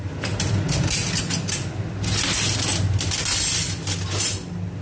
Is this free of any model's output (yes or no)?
yes